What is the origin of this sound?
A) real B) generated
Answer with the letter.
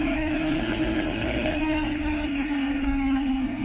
B